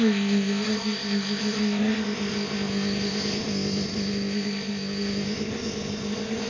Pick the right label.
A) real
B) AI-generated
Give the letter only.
B